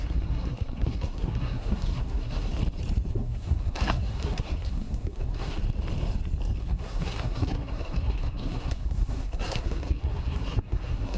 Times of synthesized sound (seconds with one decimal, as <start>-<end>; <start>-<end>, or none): 0.0-2.5; 3.1-5.6; 6.6-11.2